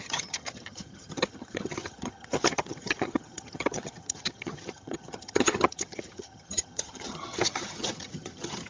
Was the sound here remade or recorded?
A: remade